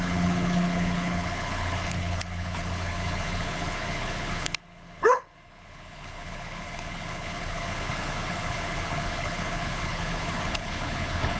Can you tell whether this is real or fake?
fake